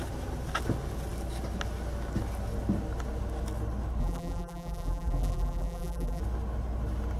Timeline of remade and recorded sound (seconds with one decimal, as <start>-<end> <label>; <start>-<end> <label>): 0.0-4.0 recorded; 4.0-6.2 remade; 6.2-7.2 recorded